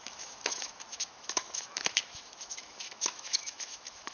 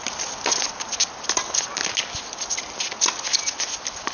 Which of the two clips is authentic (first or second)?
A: second